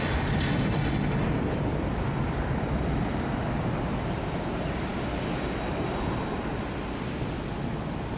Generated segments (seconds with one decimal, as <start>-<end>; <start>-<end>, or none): none